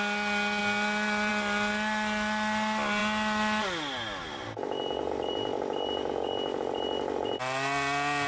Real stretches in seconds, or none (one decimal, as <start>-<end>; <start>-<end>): 0.0-8.3